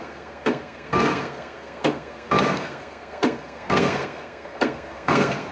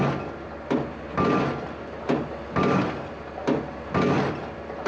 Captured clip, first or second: second